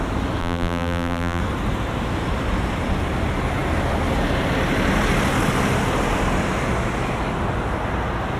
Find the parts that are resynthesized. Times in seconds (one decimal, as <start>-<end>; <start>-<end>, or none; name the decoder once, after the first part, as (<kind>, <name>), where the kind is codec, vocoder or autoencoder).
0.4-1.4 (vocoder, BigVGAN v2)